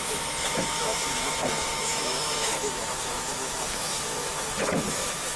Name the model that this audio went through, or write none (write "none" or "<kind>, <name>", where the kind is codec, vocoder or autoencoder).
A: autoencoder, DAC-VAE